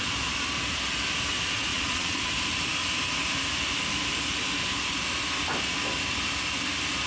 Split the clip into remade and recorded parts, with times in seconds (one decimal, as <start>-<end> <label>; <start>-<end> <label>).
0.0-1.7 recorded; 1.7-2.2 remade; 2.2-7.1 recorded